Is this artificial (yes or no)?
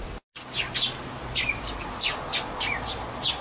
no